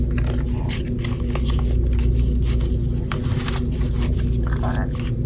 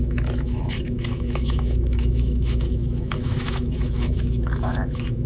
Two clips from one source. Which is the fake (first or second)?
second